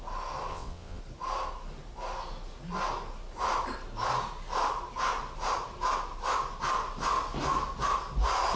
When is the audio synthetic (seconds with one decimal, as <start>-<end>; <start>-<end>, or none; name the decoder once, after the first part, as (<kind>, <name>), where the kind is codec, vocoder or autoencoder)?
0.5-1.0 (vocoder, WaveNeXt)